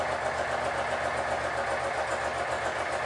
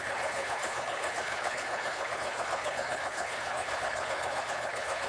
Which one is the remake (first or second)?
second